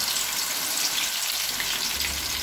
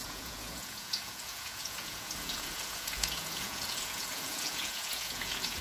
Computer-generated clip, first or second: second